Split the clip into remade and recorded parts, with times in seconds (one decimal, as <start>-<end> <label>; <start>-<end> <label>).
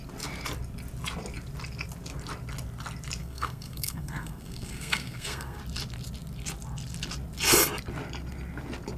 0.0-3.2 recorded; 3.2-5.6 remade; 5.6-9.0 recorded